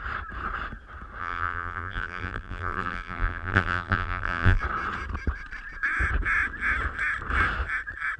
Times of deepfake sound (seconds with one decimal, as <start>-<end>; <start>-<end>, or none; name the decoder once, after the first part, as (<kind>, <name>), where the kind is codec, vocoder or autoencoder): 1.2-4.6 (vocoder, BigVGAN v2)